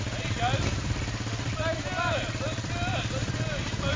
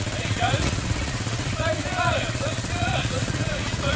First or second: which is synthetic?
second